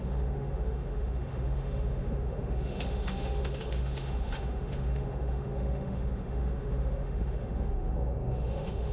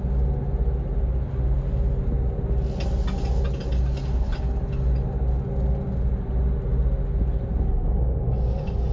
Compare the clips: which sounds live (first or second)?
second